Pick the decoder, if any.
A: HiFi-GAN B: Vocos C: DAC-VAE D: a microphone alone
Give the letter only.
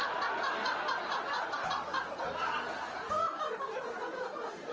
D